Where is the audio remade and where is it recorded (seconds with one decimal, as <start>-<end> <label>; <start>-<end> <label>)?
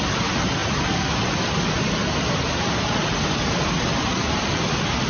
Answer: 0.0-5.1 recorded